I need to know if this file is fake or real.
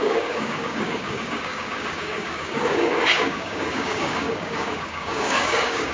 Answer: fake